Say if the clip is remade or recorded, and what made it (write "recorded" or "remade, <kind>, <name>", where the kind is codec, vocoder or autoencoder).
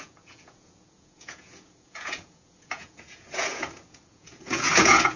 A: remade, vocoder, Vocos